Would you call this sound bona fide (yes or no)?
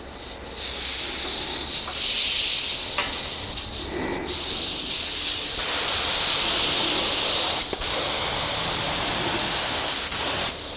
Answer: yes